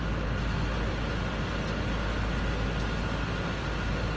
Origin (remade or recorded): recorded